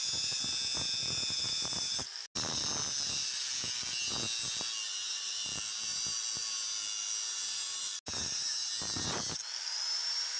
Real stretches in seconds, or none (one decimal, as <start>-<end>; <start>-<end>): 0.0-10.4